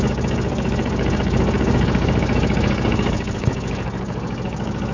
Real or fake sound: fake